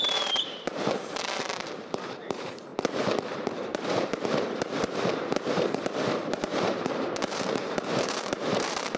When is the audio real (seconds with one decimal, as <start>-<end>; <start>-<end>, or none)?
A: 2.7-3.3